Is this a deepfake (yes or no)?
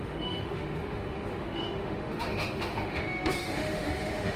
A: yes